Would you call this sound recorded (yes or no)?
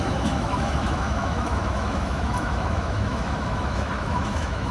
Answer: no